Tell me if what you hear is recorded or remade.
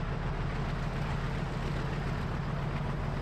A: recorded